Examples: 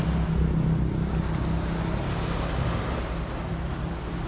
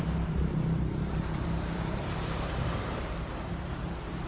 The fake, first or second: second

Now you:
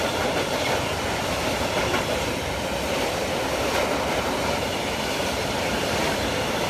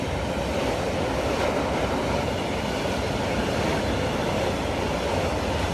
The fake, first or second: first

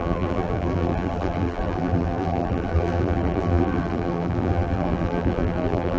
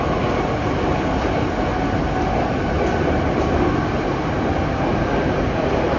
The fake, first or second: first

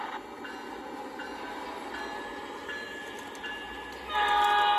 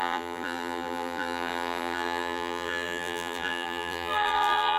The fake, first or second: second